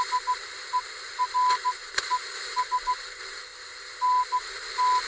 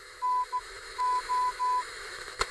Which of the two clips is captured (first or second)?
first